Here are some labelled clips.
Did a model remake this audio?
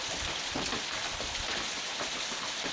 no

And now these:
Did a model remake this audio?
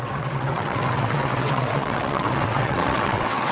yes